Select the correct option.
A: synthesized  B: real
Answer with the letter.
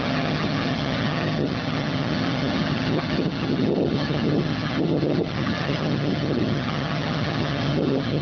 A